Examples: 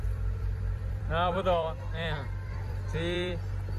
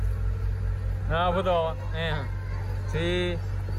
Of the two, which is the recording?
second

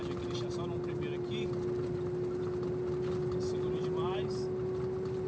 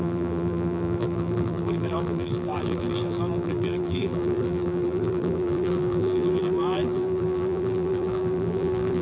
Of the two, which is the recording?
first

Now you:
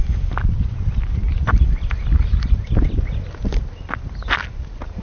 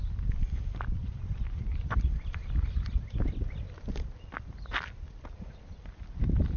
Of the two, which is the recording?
first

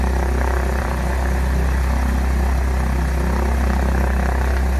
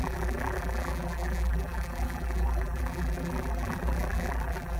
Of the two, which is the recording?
first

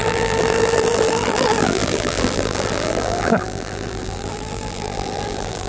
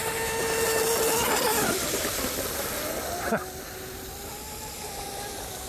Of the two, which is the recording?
second